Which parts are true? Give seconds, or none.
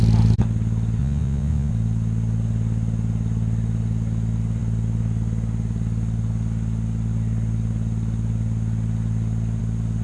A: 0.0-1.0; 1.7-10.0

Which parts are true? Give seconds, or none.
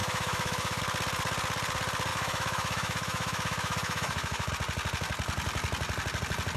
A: 0.8-2.1; 4.5-6.6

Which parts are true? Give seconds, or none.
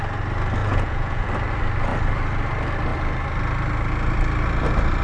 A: 0.0-0.6; 1.3-5.0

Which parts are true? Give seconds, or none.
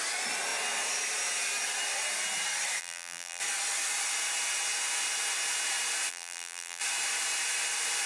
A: 0.0-2.8; 3.4-6.1; 6.8-8.1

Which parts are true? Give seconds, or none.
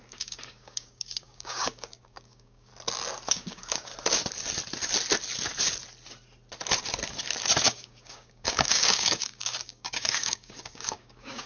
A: 2.7-3.3; 3.9-7.6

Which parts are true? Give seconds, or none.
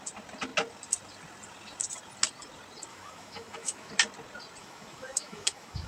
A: 0.0-2.9; 3.9-4.6